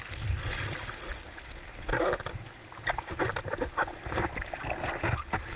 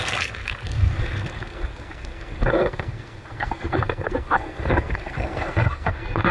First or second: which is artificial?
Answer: second